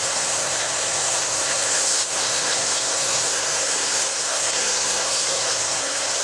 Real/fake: fake